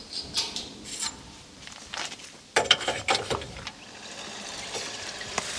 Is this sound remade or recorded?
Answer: remade